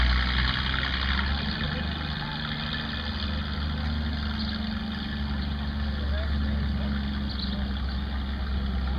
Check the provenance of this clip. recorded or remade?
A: recorded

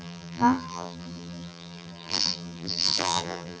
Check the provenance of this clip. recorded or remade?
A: remade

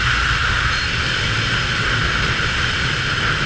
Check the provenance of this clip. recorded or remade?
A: recorded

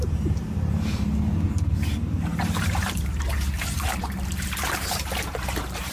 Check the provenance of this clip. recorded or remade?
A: remade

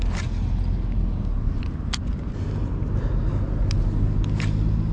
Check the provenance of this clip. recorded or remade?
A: recorded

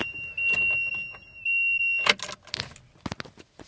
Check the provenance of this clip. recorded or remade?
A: recorded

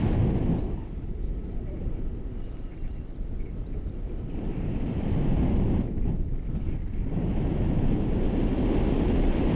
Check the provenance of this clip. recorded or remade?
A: recorded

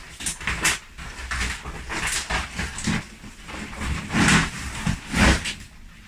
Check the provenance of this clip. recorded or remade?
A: recorded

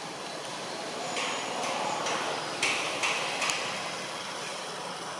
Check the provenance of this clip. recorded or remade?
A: recorded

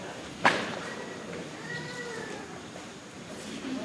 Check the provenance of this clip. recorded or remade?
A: remade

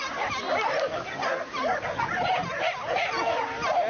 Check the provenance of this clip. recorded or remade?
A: recorded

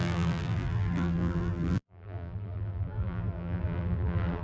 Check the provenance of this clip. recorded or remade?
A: remade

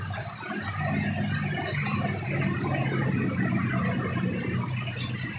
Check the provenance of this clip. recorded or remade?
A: recorded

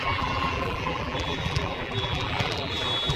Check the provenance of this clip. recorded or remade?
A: remade